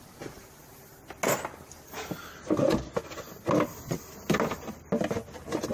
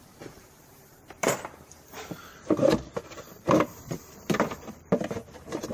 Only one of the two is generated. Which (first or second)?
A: second